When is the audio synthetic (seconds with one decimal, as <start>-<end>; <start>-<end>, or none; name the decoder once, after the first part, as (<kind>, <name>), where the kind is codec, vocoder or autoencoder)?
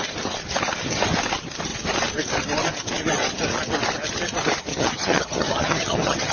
4.7-6.3 (vocoder, HiFi-GAN)